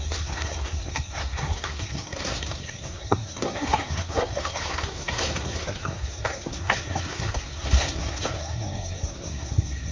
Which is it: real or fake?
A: fake